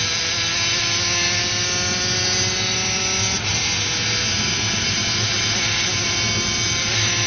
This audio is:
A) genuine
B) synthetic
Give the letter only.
A